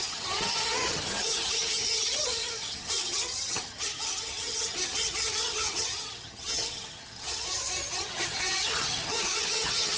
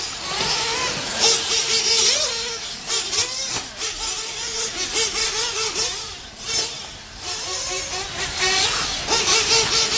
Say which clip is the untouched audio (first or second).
second